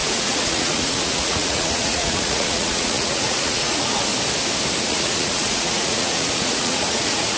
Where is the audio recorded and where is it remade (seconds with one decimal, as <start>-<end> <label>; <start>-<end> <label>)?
0.0-4.1 remade; 4.1-4.8 recorded; 4.8-7.4 remade